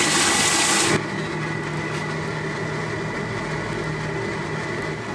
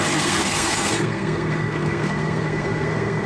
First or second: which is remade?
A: second